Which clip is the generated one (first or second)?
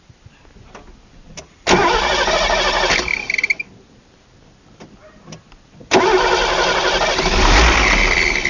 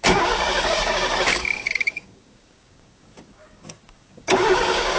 second